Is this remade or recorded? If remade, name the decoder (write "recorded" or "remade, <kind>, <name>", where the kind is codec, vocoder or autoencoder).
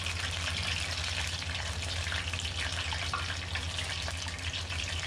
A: recorded